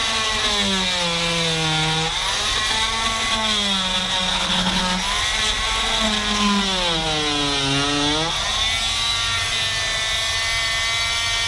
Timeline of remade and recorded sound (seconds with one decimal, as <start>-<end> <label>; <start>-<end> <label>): 0.0-4.3 recorded; 4.3-4.8 remade; 4.8-11.5 recorded